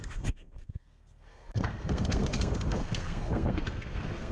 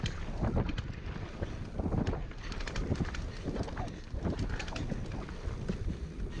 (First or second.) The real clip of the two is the second